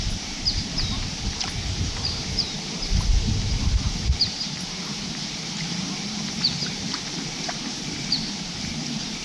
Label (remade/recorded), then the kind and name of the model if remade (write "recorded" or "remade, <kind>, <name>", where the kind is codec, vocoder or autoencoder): remade, vocoder, BigVGAN v2